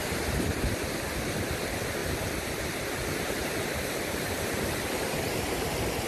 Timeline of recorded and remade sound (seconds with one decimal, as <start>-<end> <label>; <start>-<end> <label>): 0.0-2.0 recorded; 2.0-6.1 remade

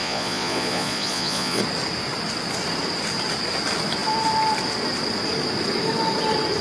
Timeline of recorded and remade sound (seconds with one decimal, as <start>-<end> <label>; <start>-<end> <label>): 0.0-1.6 remade; 1.6-6.6 recorded

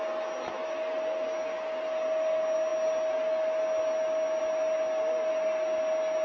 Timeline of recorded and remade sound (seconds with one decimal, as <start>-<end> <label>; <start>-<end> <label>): 0.0-6.2 recorded

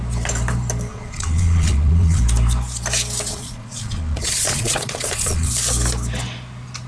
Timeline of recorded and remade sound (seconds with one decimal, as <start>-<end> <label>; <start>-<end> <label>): 0.0-0.9 recorded; 0.9-2.2 remade; 2.2-3.3 recorded; 3.3-5.5 remade; 5.5-6.9 recorded

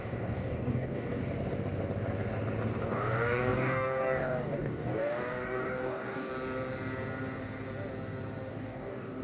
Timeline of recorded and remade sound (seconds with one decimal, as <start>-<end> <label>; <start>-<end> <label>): 0.0-1.2 remade; 1.2-2.8 recorded; 2.8-6.3 remade; 6.3-8.5 recorded; 8.5-9.2 remade

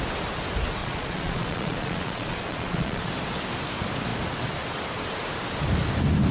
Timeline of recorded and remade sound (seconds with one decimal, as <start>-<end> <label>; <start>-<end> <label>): 0.0-0.8 recorded; 0.8-3.1 remade; 3.1-6.3 recorded

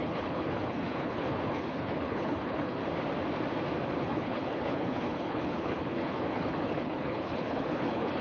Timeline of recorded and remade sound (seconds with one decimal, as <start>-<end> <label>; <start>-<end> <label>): 0.0-2.8 remade; 2.8-4.0 recorded; 4.0-8.2 remade

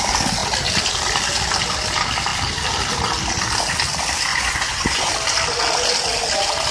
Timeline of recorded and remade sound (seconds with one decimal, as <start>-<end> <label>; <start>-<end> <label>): 0.0-4.3 recorded; 4.3-5.1 remade; 5.1-6.7 recorded